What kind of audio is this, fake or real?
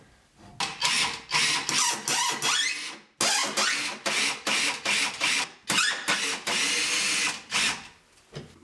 real